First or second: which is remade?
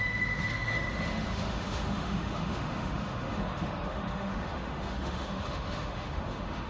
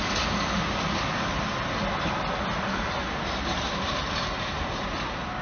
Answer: first